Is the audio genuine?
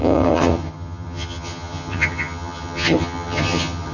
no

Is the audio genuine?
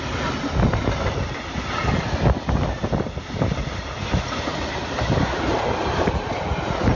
yes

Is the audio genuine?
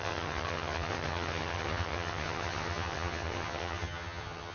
no